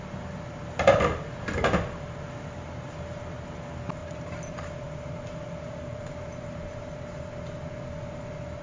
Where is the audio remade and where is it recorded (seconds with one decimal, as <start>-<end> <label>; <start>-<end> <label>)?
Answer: 0.0-4.0 recorded; 4.0-7.2 remade; 7.2-8.6 recorded